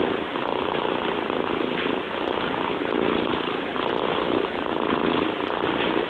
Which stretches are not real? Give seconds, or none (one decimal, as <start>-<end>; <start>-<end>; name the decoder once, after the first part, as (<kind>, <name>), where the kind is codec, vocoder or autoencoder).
none